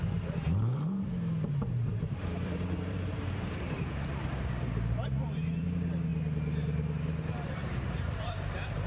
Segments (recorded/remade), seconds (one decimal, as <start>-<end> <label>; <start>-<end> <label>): 0.0-6.1 remade; 6.1-7.0 recorded; 7.0-8.9 remade